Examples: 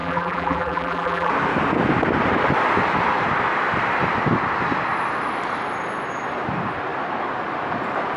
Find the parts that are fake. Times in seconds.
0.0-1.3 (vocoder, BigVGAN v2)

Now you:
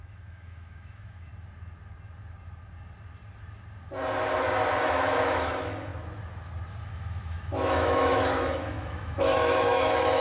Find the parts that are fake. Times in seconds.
0.0-1.3 (autoencoder, DAC-VAE); 4.8-5.9; 6.8-10.2